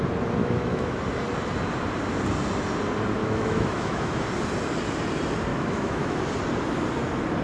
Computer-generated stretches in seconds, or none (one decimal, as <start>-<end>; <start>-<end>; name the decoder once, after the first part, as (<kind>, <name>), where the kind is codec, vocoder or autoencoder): 0.4-1.0 (autoencoder, DAC-VAE); 3.2-4.2; 5.5-6.2